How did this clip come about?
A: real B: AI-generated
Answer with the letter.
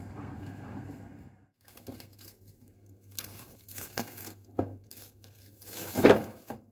B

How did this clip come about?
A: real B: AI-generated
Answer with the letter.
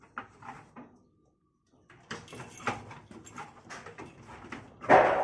A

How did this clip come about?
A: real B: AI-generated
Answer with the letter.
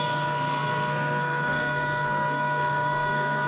B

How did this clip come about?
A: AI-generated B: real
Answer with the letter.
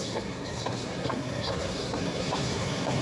A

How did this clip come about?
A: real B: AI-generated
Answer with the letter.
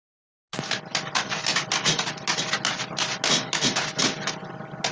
A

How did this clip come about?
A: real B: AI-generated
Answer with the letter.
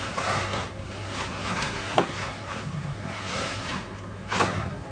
B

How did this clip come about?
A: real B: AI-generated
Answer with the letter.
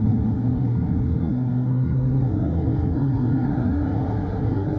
B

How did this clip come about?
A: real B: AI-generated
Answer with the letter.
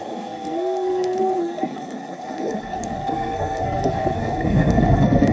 B